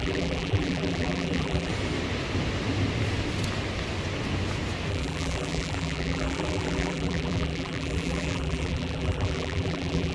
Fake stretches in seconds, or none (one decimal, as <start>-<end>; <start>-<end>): 0.0-1.7; 4.9-10.1